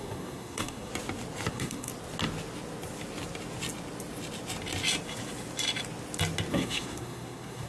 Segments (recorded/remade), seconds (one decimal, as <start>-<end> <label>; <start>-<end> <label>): 0.0-0.9 remade; 0.9-1.5 recorded; 1.5-1.9 remade; 1.9-6.5 recorded; 6.5-7.7 remade